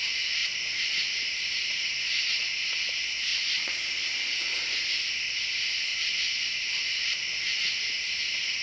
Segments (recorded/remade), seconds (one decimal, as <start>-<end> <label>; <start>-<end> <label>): 0.0-0.4 recorded; 0.4-2.3 remade; 2.3-5.9 recorded; 5.9-8.2 remade; 8.2-8.6 recorded